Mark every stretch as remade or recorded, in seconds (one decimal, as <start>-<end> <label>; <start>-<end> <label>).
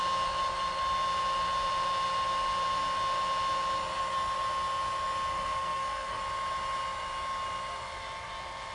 0.0-5.3 recorded; 5.3-6.2 remade; 6.2-8.7 recorded